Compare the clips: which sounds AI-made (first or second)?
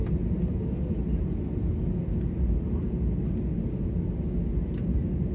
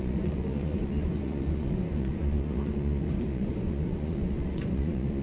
second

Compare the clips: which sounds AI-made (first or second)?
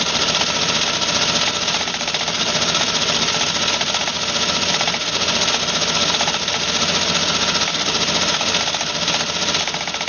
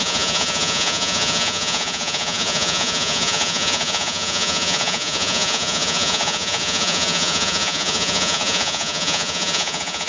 second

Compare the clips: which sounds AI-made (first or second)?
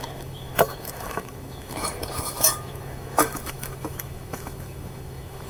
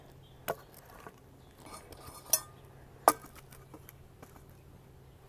first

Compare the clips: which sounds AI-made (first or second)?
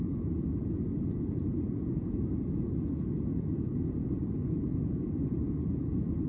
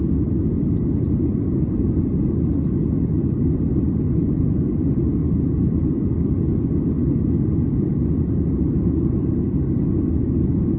first